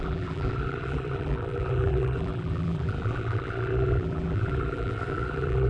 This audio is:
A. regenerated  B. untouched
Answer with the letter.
A